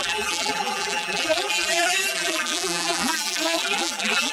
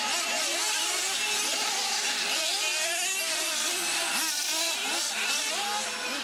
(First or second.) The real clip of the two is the second